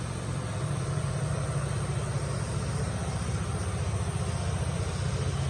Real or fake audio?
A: real